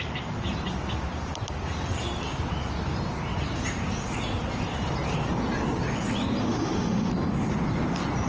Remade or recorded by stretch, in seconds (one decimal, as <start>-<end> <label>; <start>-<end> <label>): 0.0-6.4 recorded; 6.4-7.1 remade; 7.1-8.3 recorded